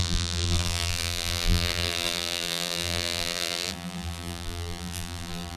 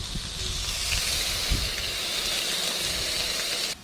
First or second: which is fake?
first